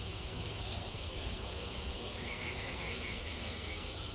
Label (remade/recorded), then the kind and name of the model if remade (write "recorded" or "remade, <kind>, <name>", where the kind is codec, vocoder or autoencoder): remade, codec, SNAC